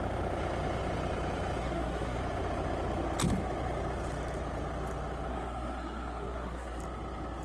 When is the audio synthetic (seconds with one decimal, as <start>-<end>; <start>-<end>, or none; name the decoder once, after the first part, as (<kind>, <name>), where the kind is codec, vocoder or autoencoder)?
1.6-2.2 (codec, SNAC); 5.3-6.8